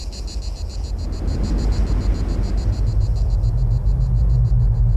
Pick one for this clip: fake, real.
real